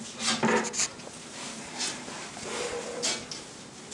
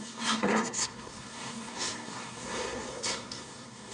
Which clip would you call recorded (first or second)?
first